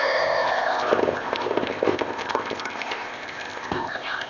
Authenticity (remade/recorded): remade